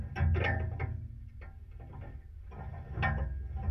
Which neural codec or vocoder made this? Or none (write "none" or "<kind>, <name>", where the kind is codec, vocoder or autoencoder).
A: none